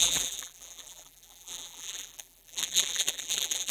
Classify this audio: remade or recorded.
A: remade